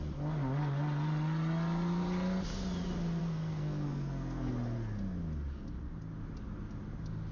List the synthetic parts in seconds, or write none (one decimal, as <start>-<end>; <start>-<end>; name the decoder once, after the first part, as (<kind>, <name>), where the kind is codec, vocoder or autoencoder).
3.2-4.5 (codec, SNAC)